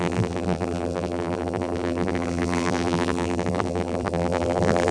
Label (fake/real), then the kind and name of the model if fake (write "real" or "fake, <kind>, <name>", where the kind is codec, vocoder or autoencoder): fake, vocoder, BigVGAN v2